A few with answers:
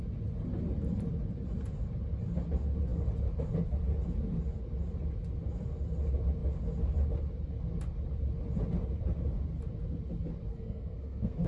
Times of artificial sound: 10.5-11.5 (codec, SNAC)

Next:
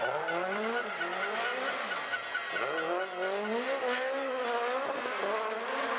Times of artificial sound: 0.0-6.0 (vocoder, BigVGAN v2)

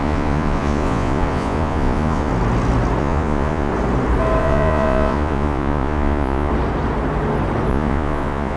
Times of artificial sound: 0.0-2.3 (vocoder, Vocos); 3.0-3.7; 4.4-6.5; 7.7-8.6